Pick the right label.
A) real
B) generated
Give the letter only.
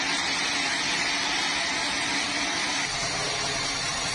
A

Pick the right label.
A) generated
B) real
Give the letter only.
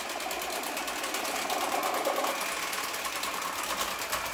B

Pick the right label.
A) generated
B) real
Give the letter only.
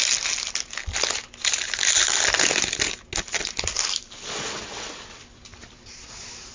B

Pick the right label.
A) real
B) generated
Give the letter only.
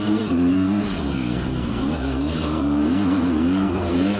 B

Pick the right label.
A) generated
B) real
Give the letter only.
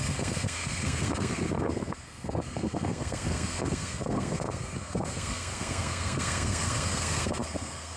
A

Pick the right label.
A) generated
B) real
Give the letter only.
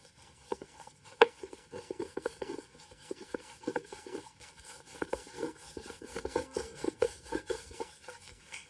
A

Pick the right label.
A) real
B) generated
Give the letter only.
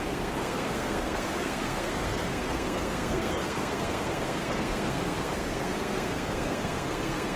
B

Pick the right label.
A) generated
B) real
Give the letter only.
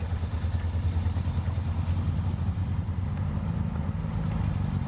B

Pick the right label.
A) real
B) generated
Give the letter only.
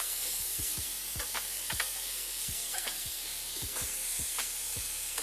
B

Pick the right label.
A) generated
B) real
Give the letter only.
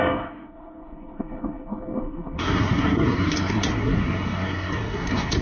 A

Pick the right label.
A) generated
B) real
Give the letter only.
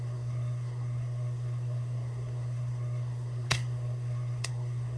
A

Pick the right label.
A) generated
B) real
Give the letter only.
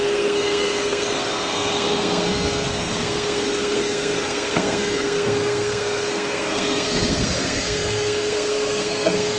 A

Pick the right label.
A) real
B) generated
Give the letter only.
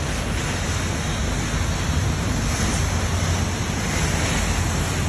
A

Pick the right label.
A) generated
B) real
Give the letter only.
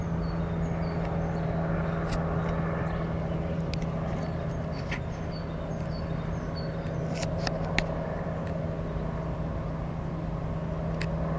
B